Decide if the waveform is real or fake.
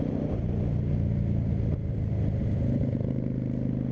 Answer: real